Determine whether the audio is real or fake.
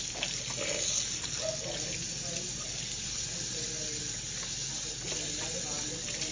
real